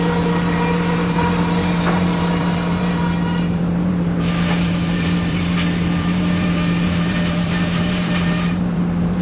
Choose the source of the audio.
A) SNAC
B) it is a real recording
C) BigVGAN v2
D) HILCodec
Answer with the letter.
C